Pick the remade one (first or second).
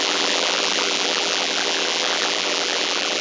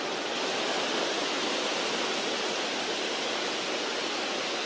first